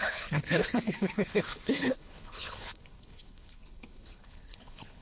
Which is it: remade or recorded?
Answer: remade